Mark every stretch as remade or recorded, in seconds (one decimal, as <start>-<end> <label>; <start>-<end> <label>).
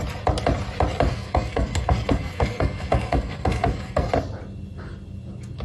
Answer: 0.0-1.1 recorded; 1.1-4.1 remade; 4.1-5.6 recorded